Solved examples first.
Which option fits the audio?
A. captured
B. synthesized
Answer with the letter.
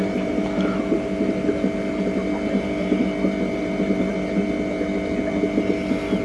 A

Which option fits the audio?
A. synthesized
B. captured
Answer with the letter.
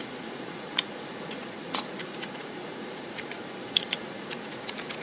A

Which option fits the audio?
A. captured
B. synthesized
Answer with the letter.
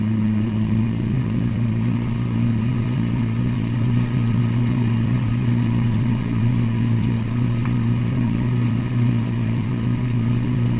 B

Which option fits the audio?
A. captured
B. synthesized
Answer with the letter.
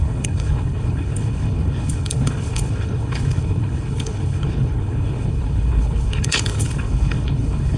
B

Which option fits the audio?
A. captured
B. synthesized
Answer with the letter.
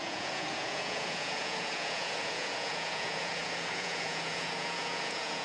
B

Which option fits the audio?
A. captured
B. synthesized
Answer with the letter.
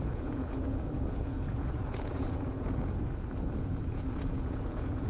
B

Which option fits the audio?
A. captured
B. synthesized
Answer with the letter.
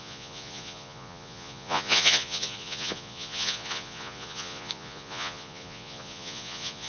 B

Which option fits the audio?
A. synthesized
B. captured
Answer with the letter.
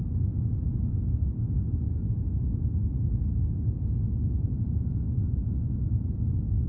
B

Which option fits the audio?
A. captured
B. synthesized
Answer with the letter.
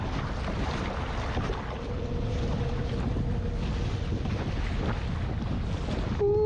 A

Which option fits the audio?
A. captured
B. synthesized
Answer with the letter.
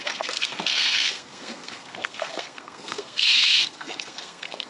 B